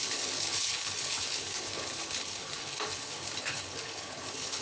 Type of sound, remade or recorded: remade